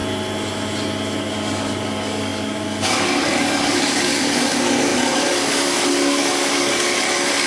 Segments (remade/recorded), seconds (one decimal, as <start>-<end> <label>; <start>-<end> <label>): 0.0-1.2 recorded; 1.2-7.5 remade